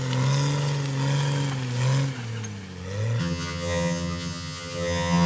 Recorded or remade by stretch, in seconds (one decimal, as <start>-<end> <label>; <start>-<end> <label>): 0.0-3.2 recorded; 3.2-5.3 remade